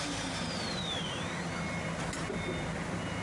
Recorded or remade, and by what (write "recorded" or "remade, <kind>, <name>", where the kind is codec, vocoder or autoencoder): recorded